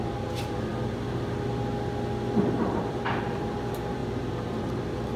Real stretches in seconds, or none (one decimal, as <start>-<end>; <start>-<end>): 0.7-2.4; 4.0-4.8